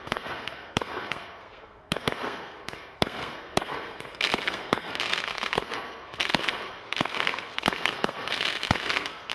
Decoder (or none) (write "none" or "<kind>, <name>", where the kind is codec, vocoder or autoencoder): codec, SNAC